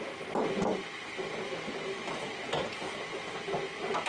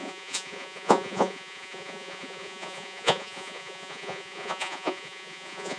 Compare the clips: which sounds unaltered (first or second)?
first